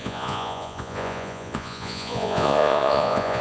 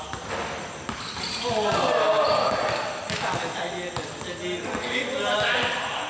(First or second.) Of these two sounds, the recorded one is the second